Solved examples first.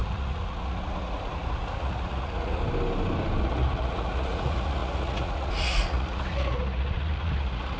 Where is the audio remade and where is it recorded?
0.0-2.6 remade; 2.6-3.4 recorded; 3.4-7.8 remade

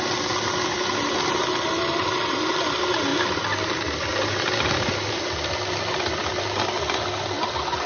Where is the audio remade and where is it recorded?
0.0-7.9 recorded

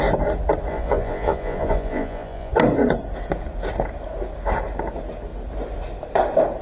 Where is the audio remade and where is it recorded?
0.0-0.7 recorded; 0.7-2.5 remade; 2.5-6.6 recorded

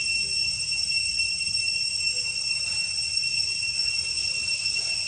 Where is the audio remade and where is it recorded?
0.0-0.4 recorded; 0.4-1.1 remade; 1.1-5.1 recorded

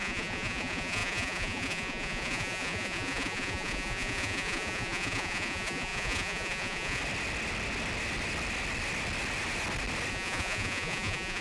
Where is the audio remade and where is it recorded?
0.0-7.0 remade; 7.0-10.1 recorded; 10.1-11.4 remade

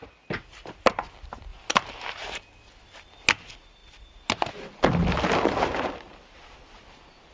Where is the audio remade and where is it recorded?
0.0-7.3 recorded

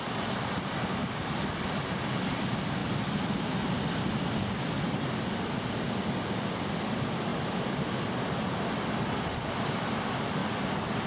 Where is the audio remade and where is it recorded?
0.0-11.1 recorded